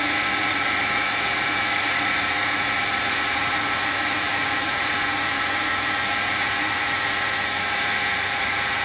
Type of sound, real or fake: fake